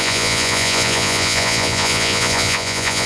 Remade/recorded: remade